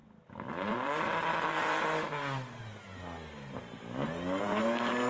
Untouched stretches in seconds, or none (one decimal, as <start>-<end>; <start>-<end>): 0.0-0.5; 2.9-4.4